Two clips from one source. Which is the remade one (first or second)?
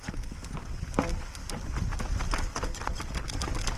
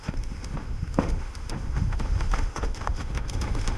second